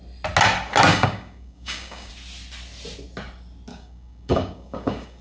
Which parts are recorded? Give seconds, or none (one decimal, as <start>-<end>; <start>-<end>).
0.0-0.9; 2.1-3.7

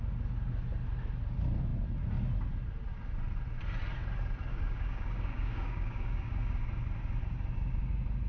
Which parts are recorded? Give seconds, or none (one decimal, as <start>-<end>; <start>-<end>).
0.0-4.5; 6.3-8.3

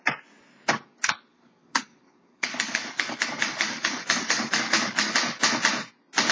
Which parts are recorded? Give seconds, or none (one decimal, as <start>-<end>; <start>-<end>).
0.0-1.3; 5.1-6.3

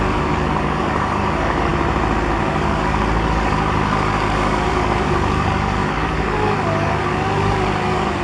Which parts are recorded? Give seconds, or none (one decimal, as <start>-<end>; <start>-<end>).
1.7-2.4